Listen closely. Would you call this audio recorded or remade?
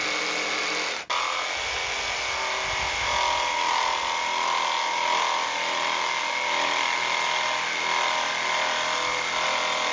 recorded